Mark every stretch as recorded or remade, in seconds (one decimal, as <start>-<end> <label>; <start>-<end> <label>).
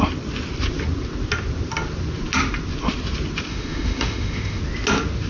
0.0-3.5 recorded; 3.5-4.6 remade; 4.6-5.3 recorded